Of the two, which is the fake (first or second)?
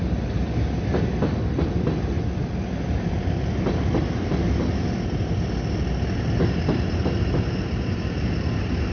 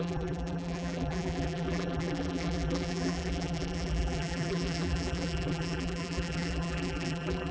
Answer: second